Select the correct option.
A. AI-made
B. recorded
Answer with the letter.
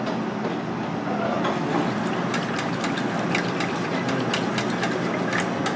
B